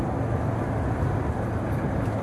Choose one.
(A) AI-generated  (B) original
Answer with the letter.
B